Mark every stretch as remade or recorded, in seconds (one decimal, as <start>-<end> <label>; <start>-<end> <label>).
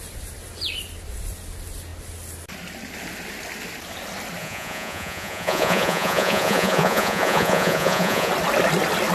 0.0-4.4 recorded; 4.4-8.3 remade; 8.3-9.1 recorded